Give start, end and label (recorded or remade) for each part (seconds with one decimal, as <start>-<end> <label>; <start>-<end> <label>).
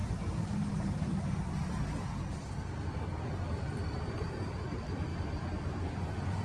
0.0-3.8 recorded; 3.8-6.4 remade